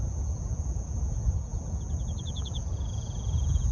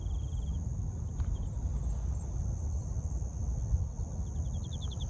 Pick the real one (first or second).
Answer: second